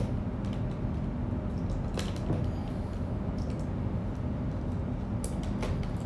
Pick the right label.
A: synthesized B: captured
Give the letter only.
B